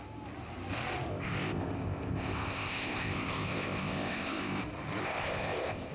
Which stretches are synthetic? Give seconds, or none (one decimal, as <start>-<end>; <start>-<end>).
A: 1.1-4.6; 5.0-5.9